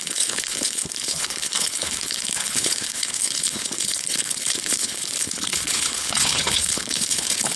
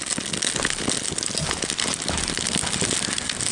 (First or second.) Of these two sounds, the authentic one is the second